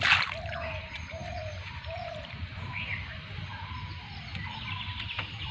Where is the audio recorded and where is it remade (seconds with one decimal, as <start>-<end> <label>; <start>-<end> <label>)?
0.0-5.5 recorded